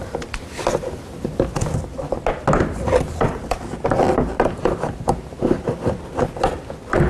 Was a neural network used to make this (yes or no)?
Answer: no